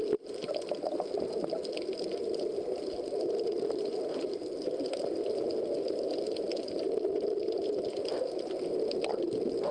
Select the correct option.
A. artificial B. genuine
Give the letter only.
B